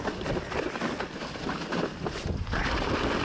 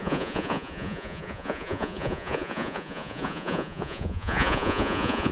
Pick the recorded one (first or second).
first